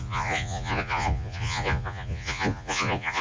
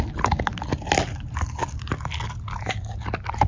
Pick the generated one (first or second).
first